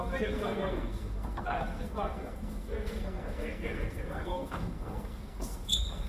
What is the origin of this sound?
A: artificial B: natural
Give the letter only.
A